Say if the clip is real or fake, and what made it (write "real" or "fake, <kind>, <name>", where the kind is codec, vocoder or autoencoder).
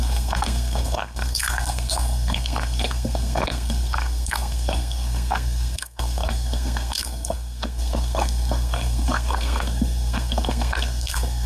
fake, codec, SNAC